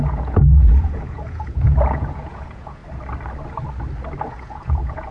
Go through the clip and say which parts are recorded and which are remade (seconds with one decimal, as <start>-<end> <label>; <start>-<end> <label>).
0.0-2.8 remade; 2.8-4.3 recorded; 4.3-5.1 remade